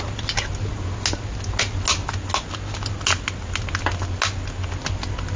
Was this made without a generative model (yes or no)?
yes